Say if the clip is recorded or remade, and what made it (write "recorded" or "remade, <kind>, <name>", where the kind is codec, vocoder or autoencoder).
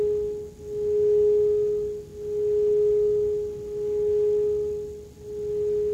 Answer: recorded